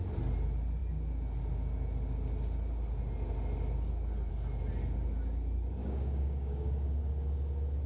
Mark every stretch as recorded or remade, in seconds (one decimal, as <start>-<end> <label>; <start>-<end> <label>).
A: 0.0-5.8 recorded; 5.8-7.0 remade; 7.0-7.9 recorded